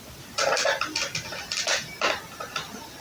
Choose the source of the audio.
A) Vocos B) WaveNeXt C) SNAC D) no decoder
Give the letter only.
D